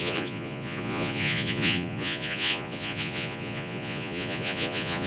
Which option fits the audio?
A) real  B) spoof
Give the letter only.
B